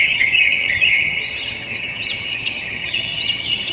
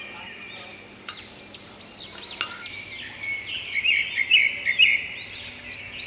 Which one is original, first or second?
second